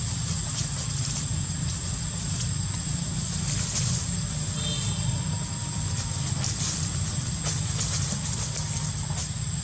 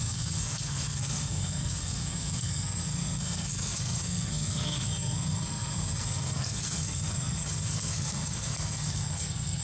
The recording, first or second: first